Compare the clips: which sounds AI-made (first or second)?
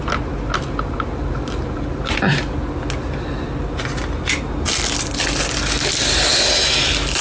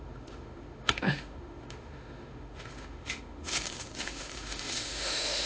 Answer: second